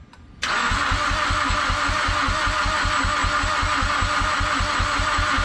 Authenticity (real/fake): real